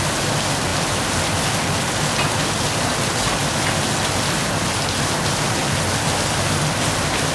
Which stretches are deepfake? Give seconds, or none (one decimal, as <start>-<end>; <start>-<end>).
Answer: none